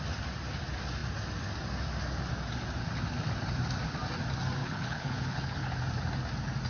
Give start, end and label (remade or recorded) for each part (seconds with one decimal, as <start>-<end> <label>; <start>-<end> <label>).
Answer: 0.0-4.6 recorded; 4.6-5.8 remade; 5.8-6.7 recorded